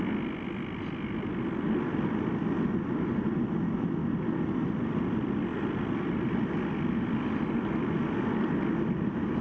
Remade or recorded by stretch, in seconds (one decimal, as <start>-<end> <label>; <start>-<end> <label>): 0.0-9.4 recorded